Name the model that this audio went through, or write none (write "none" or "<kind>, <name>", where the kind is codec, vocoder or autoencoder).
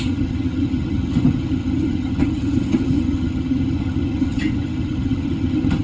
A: vocoder, HiFi-GAN